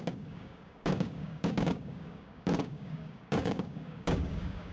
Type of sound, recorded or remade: remade